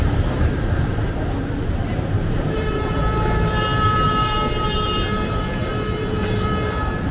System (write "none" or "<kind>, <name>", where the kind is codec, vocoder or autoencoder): vocoder, BigVGAN v2